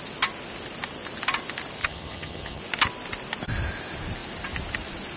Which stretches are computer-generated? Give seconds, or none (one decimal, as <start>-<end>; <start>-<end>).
1.8-2.6